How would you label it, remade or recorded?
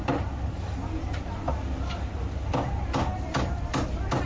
recorded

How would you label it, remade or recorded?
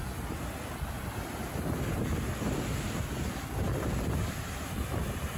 recorded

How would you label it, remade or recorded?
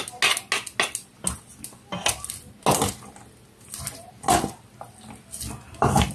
recorded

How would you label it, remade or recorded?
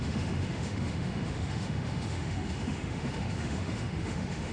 remade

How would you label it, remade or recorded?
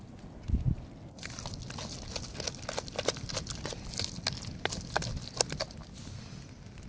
recorded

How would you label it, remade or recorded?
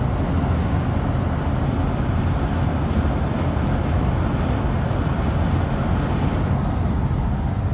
recorded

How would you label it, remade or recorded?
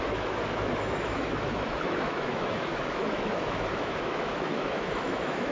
remade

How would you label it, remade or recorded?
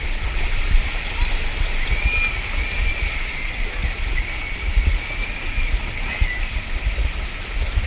recorded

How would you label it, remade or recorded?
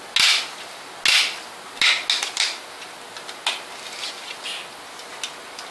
recorded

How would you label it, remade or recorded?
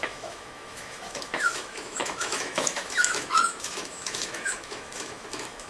remade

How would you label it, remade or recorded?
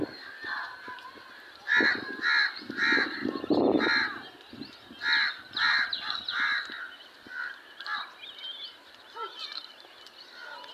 recorded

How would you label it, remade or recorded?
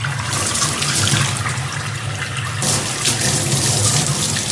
recorded